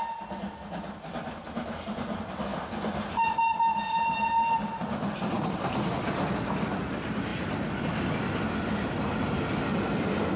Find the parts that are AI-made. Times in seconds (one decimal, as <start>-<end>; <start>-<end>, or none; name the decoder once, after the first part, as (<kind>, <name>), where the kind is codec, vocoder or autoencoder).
none